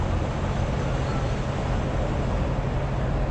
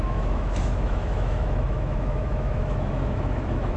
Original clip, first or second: first